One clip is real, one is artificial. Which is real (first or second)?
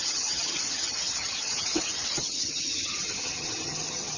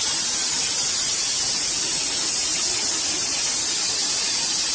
second